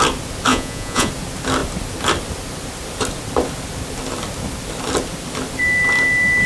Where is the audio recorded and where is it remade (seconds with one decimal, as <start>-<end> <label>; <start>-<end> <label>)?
0.0-0.5 recorded; 0.5-1.1 remade; 1.1-6.5 recorded